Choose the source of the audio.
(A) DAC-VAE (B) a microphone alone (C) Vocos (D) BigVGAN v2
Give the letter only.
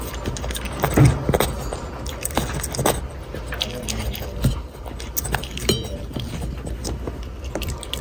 B